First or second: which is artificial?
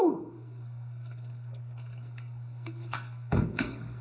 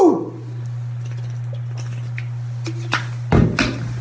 first